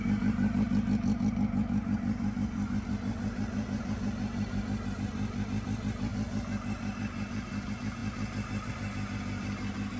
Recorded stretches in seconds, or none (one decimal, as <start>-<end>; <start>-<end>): 0.0-10.0